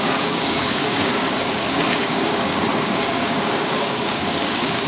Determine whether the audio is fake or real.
fake